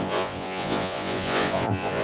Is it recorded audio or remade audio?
remade